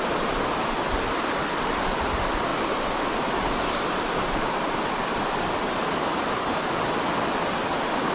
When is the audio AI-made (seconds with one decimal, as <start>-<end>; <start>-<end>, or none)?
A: none